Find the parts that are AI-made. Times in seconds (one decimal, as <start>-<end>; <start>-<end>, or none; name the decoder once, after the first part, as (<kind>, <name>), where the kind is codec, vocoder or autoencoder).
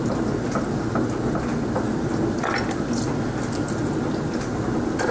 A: none